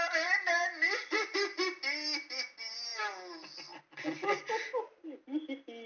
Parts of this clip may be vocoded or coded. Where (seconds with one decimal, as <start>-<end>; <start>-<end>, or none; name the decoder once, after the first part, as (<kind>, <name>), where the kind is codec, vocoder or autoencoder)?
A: none